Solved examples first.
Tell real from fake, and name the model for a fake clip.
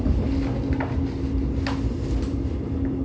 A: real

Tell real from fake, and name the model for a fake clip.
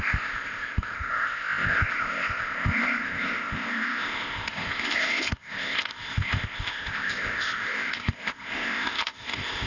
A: fake, codec, ZipCodec